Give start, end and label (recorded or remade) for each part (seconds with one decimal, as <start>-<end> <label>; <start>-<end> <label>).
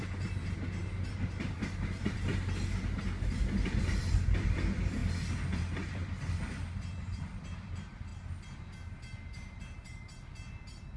0.0-2.3 remade; 2.3-3.8 recorded; 3.8-8.1 remade; 8.1-9.6 recorded; 9.6-11.0 remade